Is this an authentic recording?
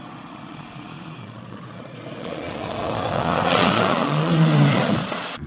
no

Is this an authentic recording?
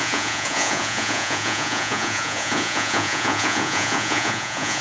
no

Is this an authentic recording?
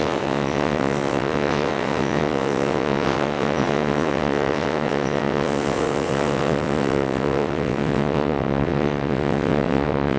no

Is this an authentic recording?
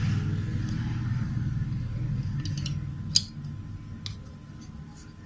yes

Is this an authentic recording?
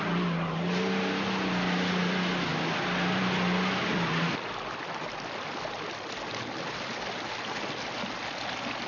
yes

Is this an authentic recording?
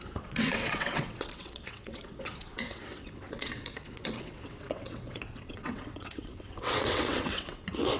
no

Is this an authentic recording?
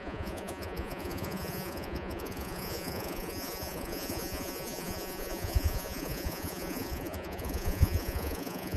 no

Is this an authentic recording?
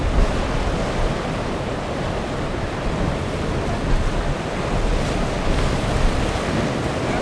yes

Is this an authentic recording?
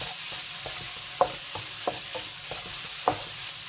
yes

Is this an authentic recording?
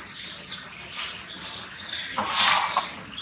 yes